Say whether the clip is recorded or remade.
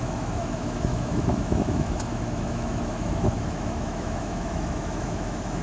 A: remade